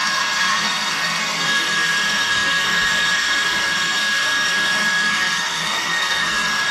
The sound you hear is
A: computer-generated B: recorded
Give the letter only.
A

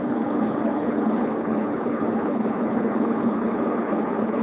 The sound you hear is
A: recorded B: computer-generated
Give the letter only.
B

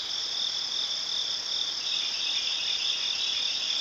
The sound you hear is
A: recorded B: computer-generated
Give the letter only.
A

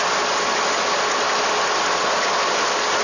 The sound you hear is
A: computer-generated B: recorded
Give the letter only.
B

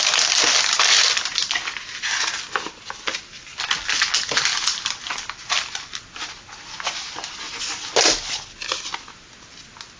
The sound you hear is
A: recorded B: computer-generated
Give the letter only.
A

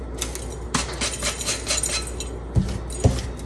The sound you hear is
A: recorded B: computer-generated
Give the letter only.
A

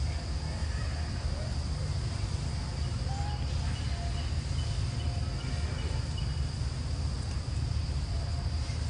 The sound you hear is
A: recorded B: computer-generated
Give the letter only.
A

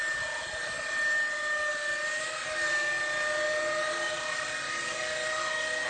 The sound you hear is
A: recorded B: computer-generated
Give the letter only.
A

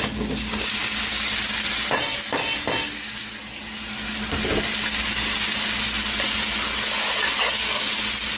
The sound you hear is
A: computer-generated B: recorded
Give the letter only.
B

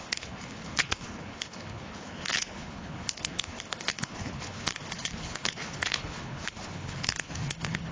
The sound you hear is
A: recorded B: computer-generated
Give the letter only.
B